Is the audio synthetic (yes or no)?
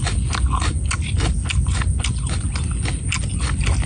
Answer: no